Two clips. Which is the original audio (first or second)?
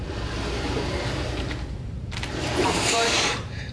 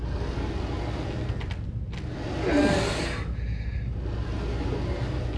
second